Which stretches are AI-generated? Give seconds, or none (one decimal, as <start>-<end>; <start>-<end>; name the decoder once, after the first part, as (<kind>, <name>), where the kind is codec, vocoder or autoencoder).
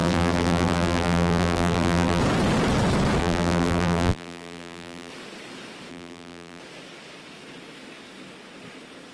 0.0-2.2 (vocoder, BigVGAN v2); 3.2-5.1; 5.9-6.6